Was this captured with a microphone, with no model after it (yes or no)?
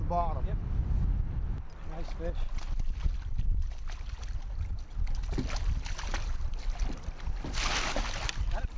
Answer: yes